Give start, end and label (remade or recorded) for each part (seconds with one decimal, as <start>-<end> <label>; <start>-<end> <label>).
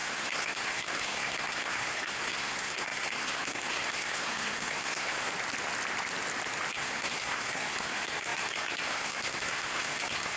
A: 0.0-5.3 remade; 5.3-6.7 recorded; 6.7-10.4 remade